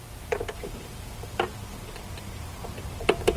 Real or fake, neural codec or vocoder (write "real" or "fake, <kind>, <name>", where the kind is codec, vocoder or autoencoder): fake, vocoder, BigVGAN v2